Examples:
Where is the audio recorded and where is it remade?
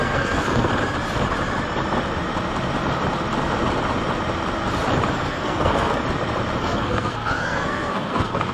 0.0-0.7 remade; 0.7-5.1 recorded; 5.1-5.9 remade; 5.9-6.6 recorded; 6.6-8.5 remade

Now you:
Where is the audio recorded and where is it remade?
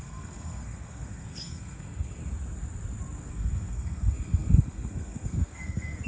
0.0-2.2 remade; 2.2-3.3 recorded; 3.3-6.1 remade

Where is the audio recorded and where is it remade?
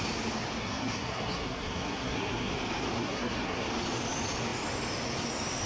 0.0-0.6 recorded; 0.6-2.5 remade; 2.5-3.0 recorded; 3.0-3.7 remade; 3.7-5.7 recorded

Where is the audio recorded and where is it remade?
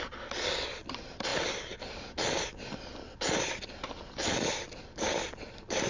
0.0-5.9 recorded